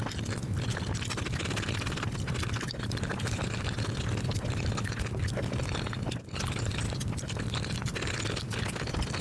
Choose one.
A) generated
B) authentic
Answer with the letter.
B